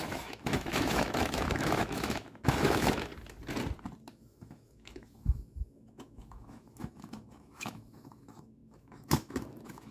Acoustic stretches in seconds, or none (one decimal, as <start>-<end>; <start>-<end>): 3.1-4.1